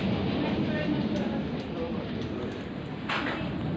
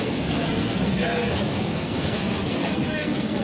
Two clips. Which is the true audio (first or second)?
first